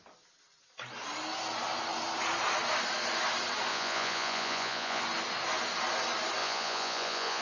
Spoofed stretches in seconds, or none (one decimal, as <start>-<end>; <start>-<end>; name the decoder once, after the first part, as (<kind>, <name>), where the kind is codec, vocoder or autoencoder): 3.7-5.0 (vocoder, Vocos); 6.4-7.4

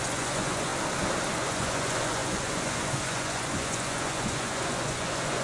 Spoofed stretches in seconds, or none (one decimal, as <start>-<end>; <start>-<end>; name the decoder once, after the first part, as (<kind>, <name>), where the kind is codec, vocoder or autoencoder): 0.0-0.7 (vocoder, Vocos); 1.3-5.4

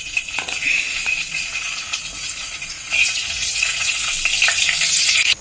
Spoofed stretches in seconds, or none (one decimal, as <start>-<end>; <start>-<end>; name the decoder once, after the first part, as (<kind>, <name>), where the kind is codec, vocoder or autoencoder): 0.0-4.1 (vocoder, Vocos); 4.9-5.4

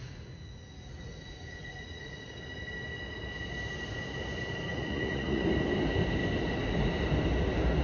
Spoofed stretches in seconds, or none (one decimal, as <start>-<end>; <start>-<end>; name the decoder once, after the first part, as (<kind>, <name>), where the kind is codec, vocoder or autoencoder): 0.0-2.2 (vocoder, Vocos); 4.7-5.4

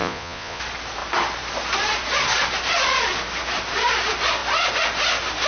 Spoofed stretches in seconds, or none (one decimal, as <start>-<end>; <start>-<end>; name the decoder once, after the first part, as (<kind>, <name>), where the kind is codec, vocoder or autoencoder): 0.0-0.6 (vocoder, Vocos)